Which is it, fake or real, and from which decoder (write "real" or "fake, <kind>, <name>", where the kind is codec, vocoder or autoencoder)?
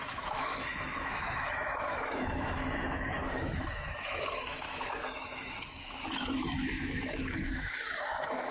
fake, autoencoder, DAC-VAE